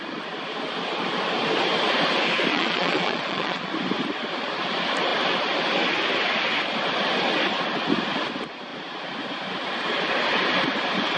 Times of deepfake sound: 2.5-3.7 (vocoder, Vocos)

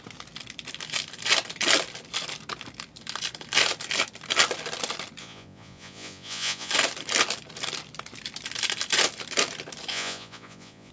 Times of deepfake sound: 5.2-6.7 (vocoder, Vocos); 9.9-10.9

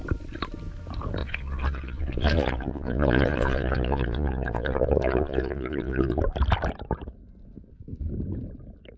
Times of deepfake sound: 1.2-6.2 (vocoder, Vocos)

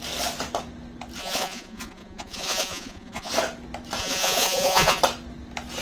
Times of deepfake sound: 1.2-3.3 (vocoder, Vocos); 4.0-5.0